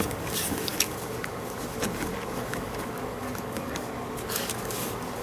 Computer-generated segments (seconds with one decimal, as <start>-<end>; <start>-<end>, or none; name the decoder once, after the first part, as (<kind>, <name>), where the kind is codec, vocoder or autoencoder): 0.0-5.2 (codec, DAC)